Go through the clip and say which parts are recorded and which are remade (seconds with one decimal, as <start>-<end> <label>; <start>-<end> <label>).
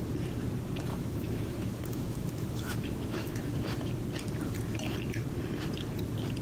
0.0-0.9 recorded; 0.9-3.9 remade; 3.9-6.4 recorded